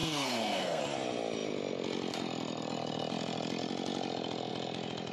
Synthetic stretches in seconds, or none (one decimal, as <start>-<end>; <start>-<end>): 0.0-0.8